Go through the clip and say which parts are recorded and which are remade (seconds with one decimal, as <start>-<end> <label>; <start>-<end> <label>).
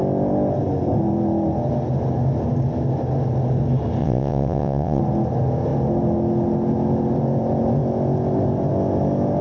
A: 0.0-4.0 recorded; 4.0-5.0 remade; 5.0-9.4 recorded